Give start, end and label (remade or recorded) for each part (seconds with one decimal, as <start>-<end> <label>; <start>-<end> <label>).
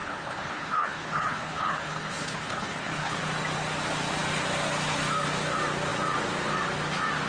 0.0-3.2 remade; 3.2-7.3 recorded